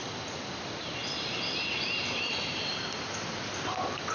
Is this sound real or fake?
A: real